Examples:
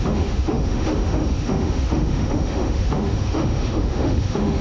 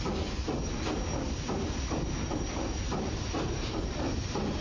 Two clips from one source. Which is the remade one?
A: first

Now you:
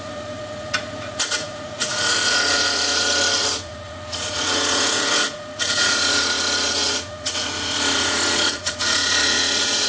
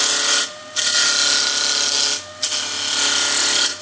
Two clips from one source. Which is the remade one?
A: first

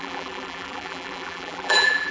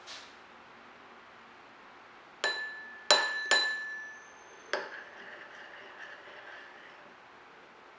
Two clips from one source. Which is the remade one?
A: first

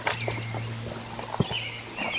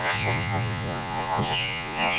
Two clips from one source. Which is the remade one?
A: second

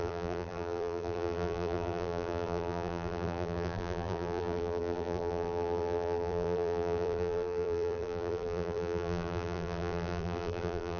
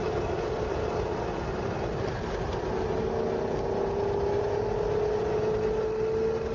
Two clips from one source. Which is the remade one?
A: first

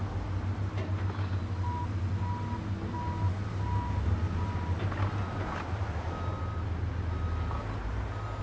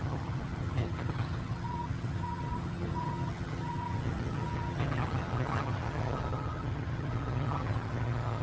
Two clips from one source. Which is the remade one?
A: second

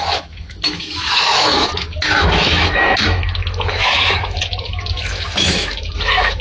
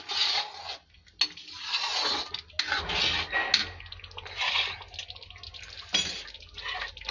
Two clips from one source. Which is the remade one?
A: first